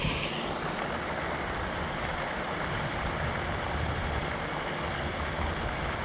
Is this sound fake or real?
real